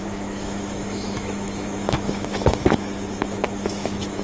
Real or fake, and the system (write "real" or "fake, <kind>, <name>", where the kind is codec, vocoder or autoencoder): fake, autoencoder, DAC-VAE